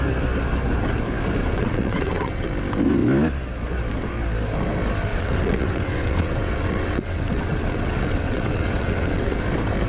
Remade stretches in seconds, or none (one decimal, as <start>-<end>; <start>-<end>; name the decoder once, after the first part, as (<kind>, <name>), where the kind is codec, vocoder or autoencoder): 1.4-2.5 (vocoder, WaveNeXt); 5.1-9.4